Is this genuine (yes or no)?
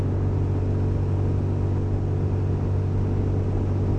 yes